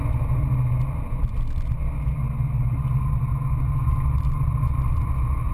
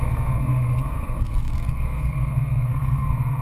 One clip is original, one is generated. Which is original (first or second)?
first